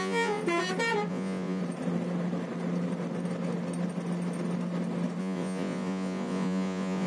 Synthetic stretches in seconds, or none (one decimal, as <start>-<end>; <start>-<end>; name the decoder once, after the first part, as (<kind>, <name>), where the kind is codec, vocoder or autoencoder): 0.0-0.4 (vocoder, Vocos); 1.1-1.6; 5.2-7.1